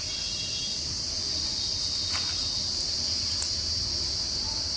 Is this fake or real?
real